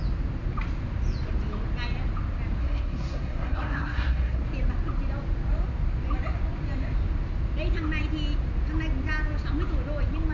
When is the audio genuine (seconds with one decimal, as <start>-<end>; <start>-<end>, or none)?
0.0-2.6; 4.4-10.3